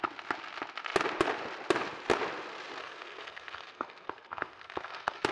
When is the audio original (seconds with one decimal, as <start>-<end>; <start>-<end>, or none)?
0.0-2.8